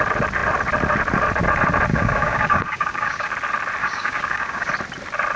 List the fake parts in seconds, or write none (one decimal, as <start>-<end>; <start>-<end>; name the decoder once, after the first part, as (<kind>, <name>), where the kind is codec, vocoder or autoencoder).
1.9-3.3 (codec, DAC); 3.8-4.7